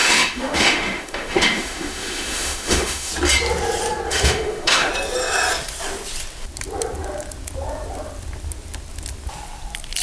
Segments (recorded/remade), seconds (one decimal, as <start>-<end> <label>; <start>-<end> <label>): 0.0-3.1 remade; 3.1-4.1 recorded; 4.1-4.9 remade; 4.9-10.0 recorded